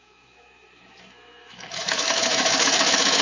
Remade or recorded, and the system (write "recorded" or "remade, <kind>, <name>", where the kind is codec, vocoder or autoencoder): remade, autoencoder, DAC-VAE